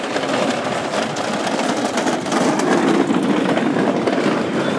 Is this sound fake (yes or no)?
no